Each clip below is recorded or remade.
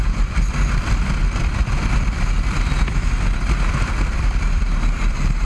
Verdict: remade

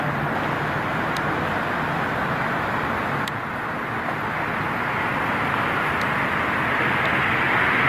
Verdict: recorded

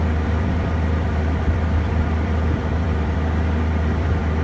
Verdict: remade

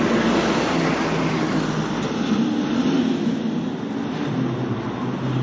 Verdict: recorded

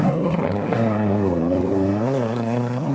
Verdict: remade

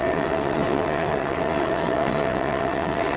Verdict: remade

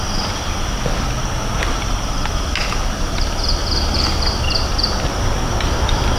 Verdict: recorded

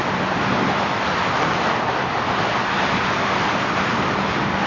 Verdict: recorded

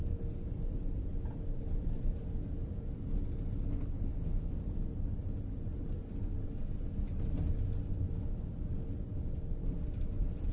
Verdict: recorded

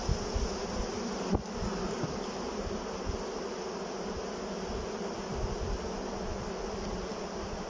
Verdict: recorded